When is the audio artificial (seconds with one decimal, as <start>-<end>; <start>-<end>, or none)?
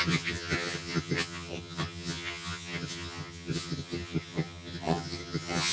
0.0-5.7